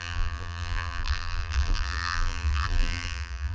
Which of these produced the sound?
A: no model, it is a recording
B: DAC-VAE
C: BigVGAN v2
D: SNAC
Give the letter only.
C